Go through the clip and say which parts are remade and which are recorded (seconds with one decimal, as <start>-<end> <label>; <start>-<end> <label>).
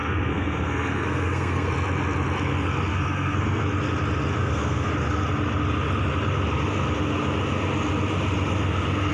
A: 0.0-1.7 remade; 1.7-2.9 recorded; 2.9-3.6 remade; 3.6-4.4 recorded; 4.4-4.9 remade; 4.9-9.1 recorded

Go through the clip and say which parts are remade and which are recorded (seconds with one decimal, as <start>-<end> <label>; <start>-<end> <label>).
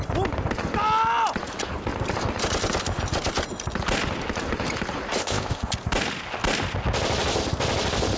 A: 0.0-5.2 recorded; 5.2-5.7 remade; 5.7-8.2 recorded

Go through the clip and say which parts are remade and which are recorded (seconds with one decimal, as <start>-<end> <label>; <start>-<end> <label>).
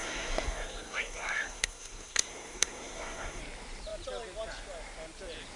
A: 0.0-3.4 remade; 3.4-5.6 recorded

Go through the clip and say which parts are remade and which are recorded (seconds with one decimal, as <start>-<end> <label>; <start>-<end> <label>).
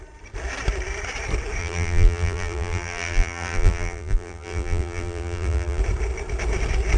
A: 0.0-1.6 recorded; 1.6-5.8 remade; 5.8-7.0 recorded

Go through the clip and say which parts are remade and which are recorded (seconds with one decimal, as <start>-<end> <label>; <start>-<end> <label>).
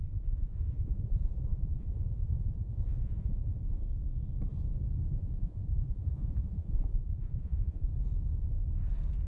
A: 0.0-3.6 remade; 3.6-5.2 recorded; 5.2-7.9 remade; 7.9-9.3 recorded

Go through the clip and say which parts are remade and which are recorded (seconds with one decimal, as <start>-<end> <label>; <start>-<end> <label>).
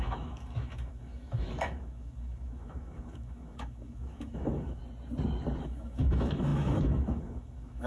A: 0.0-4.8 remade; 4.8-5.6 recorded; 5.6-7.9 remade